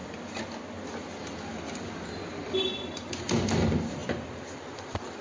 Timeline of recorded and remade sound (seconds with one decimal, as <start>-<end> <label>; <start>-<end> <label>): 0.0-3.1 recorded; 3.1-5.2 remade